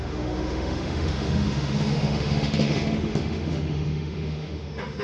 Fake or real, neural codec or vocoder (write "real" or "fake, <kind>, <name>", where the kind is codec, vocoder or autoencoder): fake, autoencoder, DAC-VAE